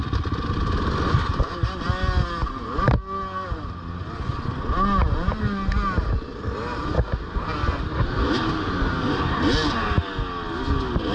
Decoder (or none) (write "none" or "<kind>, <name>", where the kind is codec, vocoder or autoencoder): none